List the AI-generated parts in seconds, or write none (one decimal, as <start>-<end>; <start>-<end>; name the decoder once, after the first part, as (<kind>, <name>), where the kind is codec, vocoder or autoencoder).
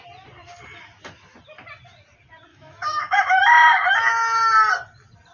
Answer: 2.5-3.4 (autoencoder, DAC-VAE)